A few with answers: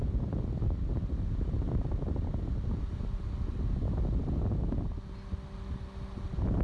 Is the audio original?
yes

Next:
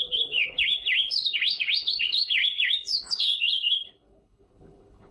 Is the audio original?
no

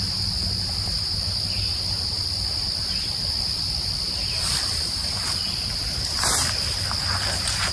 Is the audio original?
yes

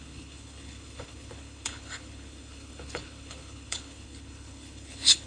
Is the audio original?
no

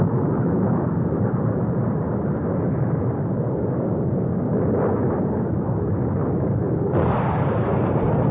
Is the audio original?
yes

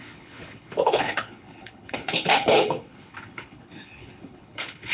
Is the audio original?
no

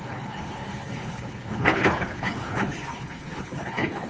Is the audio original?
no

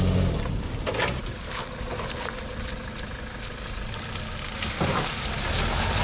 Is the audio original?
yes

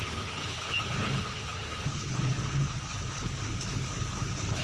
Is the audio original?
no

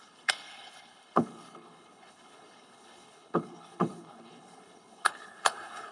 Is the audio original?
no